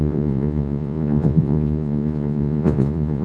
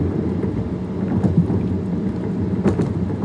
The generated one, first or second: first